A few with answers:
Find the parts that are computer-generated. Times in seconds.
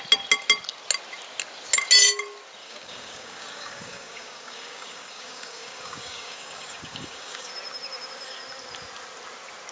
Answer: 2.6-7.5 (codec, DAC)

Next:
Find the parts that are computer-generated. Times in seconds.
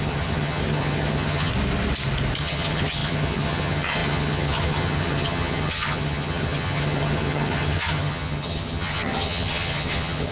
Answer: 0.0-1.5 (vocoder, HiFi-GAN); 2.4-10.3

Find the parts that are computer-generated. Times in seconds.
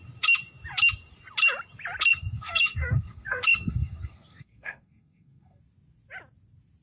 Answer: 2.1-5.6 (codec, SNAC)